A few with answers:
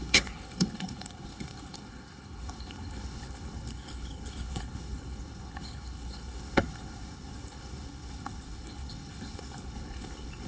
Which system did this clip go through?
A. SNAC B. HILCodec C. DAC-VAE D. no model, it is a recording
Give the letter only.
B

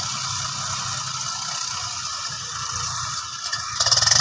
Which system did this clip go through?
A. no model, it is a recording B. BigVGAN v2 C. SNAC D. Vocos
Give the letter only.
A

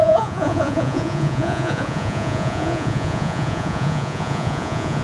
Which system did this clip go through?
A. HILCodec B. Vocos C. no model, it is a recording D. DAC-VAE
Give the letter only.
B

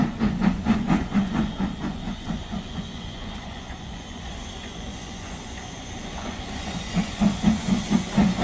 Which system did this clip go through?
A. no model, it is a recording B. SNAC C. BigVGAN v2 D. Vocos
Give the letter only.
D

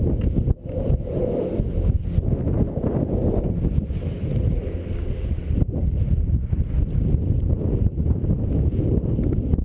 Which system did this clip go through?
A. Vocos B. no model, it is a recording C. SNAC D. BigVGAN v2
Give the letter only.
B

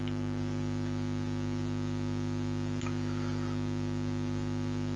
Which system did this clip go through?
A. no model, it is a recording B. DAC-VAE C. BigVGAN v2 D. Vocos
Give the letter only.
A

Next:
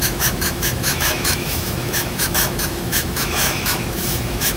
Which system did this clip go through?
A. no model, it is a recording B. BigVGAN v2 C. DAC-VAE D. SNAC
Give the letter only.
C